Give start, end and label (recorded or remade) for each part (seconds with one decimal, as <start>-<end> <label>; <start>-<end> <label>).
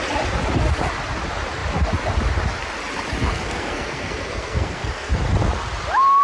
0.0-3.2 recorded; 3.2-5.2 remade; 5.2-6.2 recorded